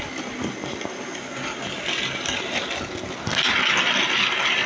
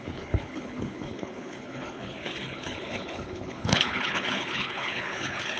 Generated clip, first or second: second